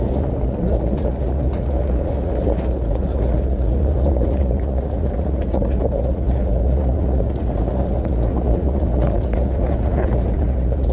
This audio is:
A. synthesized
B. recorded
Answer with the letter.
A